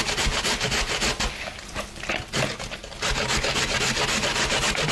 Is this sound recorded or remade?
recorded